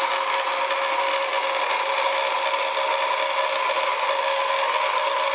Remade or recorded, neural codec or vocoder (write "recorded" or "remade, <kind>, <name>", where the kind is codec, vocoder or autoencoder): recorded